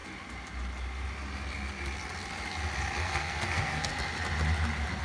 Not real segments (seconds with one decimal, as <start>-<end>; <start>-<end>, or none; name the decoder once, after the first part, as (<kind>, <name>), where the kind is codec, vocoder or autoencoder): 3.0-3.9 (codec, SNAC)